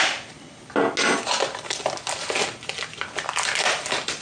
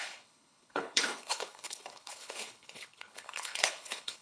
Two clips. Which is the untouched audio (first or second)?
first